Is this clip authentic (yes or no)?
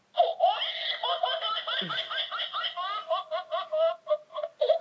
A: yes